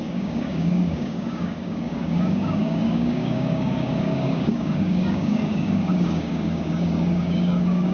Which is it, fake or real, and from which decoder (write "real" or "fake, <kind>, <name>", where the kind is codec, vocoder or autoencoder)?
fake, codec, DAC